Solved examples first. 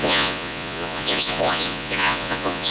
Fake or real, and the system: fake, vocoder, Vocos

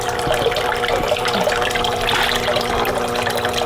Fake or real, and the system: real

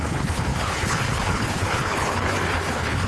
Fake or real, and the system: fake, codec, HILCodec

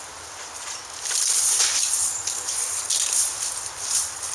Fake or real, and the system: real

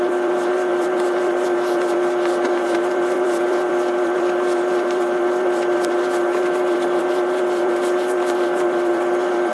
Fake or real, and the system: fake, vocoder, BigVGAN v2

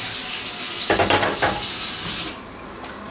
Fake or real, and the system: real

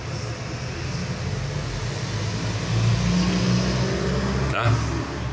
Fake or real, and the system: real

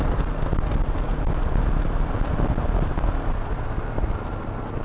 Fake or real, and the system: real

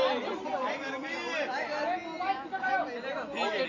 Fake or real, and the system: fake, vocoder, BigVGAN v2